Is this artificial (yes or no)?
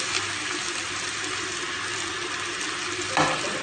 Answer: no